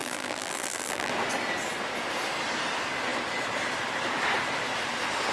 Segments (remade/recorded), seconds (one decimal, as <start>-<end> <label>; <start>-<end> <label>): 0.0-1.1 remade; 1.1-5.3 recorded